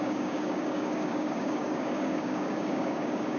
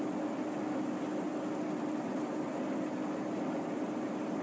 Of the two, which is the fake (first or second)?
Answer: first